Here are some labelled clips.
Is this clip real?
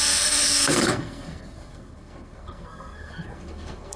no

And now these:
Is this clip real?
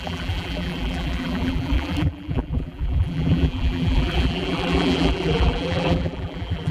no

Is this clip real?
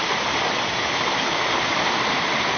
no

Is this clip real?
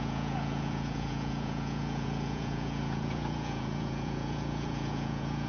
no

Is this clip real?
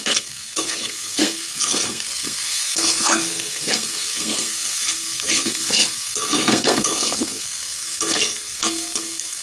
no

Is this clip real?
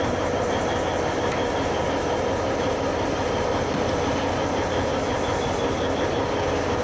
yes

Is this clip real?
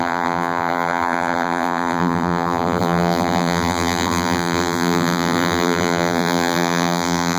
no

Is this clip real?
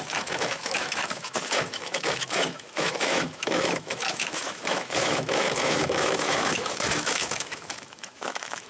no